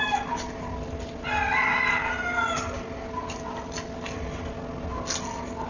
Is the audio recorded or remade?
recorded